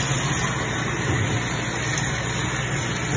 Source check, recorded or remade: recorded